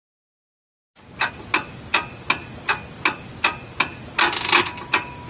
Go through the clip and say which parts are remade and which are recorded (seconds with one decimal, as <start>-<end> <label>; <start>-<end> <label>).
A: 0.0-5.3 recorded